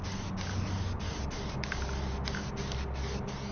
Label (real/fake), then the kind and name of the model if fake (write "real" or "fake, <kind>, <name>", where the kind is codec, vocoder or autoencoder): real